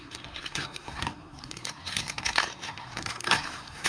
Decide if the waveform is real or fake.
fake